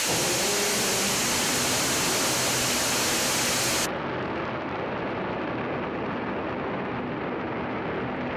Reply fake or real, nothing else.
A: real